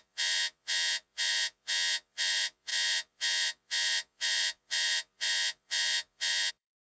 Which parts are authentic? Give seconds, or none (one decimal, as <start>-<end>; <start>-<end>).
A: none